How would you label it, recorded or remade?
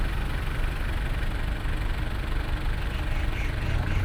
recorded